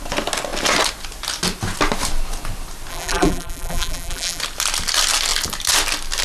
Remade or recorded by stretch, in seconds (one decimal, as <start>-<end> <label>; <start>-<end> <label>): 0.0-2.9 recorded; 2.9-4.4 remade; 4.4-6.2 recorded